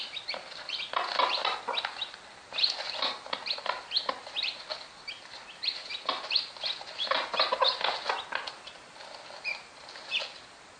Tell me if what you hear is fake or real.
real